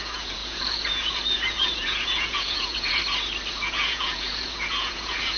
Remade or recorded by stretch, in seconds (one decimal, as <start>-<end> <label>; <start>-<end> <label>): 0.0-3.0 remade; 3.0-3.5 recorded; 3.5-5.4 remade